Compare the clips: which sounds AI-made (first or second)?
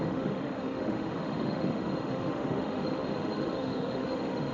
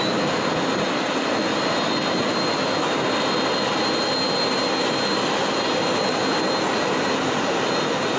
first